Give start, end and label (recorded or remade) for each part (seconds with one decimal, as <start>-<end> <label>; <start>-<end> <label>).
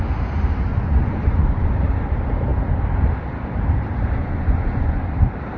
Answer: 0.0-0.7 recorded; 0.7-1.7 remade; 1.7-4.2 recorded; 4.2-5.0 remade; 5.0-5.6 recorded